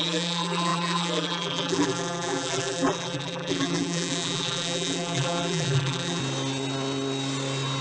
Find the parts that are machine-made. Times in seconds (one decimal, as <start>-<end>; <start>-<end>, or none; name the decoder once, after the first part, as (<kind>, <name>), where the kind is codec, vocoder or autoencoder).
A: 0.0-6.2 (vocoder, BigVGAN v2)